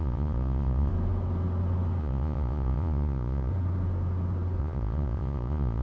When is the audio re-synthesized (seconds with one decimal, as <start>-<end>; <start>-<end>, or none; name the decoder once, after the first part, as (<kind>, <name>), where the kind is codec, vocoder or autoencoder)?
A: 0.0-0.9 (vocoder, Vocos); 2.0-3.5; 4.6-5.8